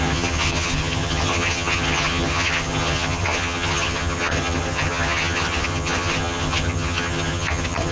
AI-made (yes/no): yes